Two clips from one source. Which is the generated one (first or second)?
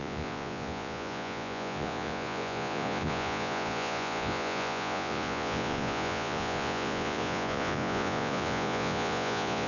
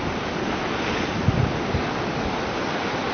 first